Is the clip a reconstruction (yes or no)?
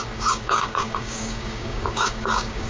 yes